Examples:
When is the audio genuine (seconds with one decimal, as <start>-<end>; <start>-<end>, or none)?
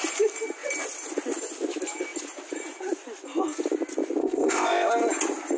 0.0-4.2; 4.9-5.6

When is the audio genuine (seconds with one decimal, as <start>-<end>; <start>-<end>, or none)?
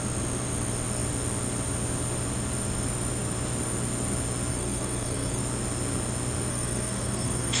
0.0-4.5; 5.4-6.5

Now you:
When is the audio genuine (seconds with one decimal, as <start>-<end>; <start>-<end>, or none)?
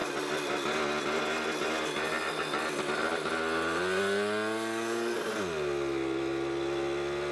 0.0-7.3